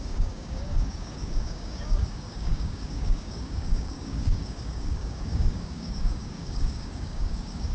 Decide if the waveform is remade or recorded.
remade